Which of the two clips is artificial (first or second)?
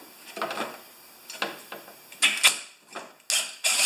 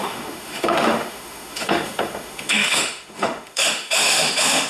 second